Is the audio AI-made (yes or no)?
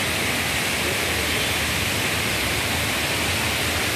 no